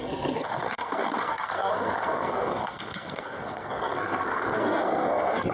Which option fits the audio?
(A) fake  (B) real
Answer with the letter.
A